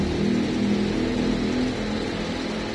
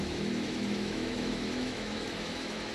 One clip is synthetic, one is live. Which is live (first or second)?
first